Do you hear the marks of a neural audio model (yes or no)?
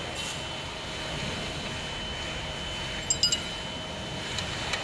no